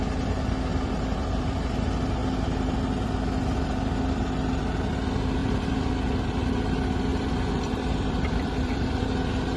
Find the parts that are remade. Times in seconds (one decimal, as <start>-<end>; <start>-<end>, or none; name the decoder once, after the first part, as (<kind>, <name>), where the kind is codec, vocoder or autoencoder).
0.7-1.6 (vocoder, BigVGAN v2); 5.4-5.9; 7.1-9.0

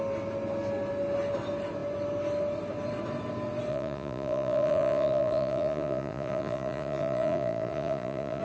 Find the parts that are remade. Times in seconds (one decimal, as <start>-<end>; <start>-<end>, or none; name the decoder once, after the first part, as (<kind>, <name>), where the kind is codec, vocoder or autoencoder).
3.7-8.4 (vocoder, Vocos)